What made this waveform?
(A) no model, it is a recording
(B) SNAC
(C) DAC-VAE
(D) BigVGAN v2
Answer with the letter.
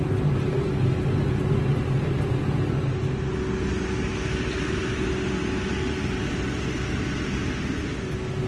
A